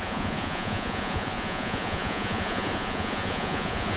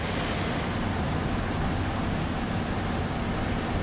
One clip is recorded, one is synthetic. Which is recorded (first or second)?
second